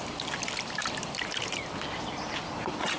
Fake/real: real